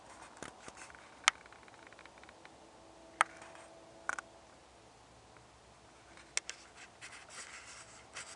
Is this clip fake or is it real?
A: real